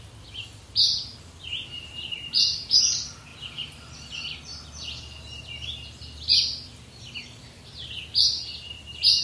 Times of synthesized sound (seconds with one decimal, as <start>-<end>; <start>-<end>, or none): 0.0-9.2

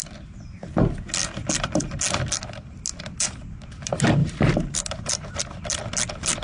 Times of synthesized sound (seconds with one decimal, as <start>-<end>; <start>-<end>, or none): 4.2-5.4

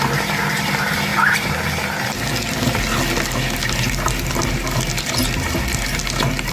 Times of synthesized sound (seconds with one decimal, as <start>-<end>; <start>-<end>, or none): none